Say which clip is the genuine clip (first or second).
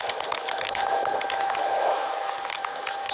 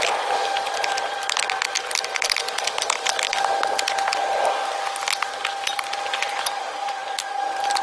second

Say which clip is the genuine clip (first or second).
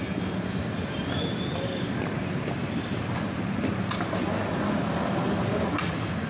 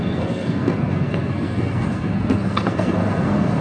first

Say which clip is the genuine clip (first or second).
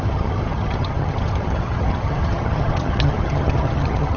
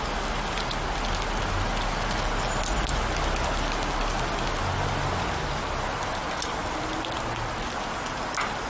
second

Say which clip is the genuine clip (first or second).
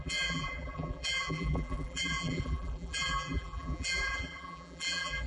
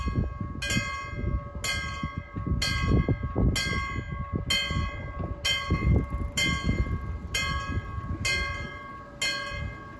second